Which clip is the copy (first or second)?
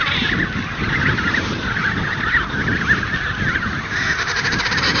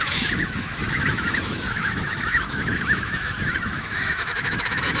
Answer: second